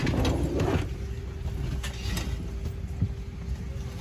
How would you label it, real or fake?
real